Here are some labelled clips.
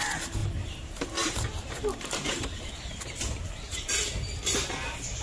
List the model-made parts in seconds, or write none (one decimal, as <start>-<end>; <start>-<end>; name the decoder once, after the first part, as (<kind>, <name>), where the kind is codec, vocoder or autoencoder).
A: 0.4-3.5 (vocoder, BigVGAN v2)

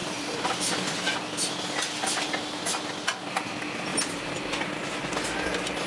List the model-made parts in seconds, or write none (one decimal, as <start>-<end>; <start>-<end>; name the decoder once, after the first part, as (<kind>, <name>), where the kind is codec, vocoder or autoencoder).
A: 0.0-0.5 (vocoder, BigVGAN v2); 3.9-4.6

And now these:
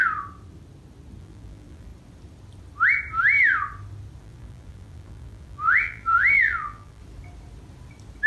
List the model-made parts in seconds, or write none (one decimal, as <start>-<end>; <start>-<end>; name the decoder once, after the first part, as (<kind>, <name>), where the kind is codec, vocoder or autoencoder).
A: 1.2-1.9 (vocoder, BigVGAN v2); 4.2-7.0

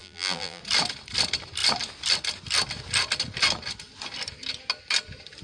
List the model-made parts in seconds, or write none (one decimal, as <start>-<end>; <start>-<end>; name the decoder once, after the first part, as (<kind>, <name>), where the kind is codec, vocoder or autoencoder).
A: 0.0-0.6 (vocoder, BigVGAN v2)